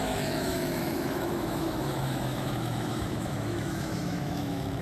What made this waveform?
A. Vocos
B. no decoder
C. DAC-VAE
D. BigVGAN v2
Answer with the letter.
C